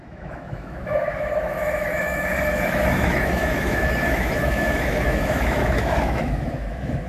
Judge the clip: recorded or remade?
remade